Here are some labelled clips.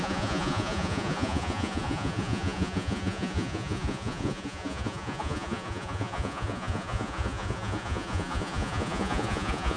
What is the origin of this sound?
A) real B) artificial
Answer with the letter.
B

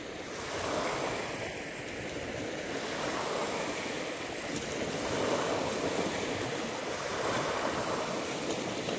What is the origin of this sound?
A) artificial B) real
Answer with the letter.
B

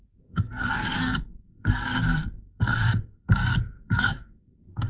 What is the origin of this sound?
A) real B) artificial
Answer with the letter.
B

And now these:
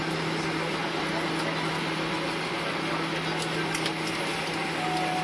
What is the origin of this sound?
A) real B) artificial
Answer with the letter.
A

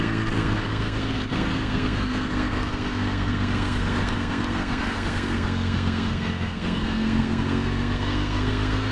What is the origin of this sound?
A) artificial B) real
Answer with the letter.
A